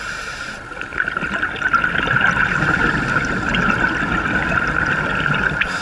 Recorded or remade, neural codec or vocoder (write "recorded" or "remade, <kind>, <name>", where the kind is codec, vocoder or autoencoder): recorded